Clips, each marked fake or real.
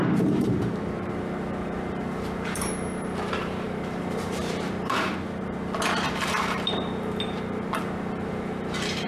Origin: fake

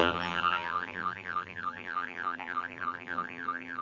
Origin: fake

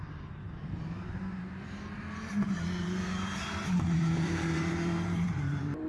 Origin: fake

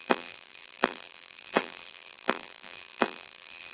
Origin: fake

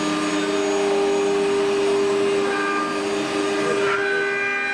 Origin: real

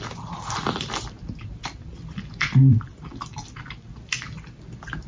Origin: fake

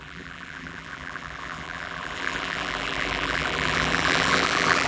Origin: fake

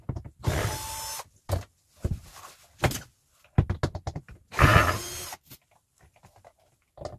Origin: real